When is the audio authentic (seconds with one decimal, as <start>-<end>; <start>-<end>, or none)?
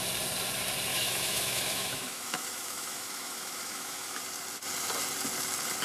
0.0-0.9; 4.2-5.8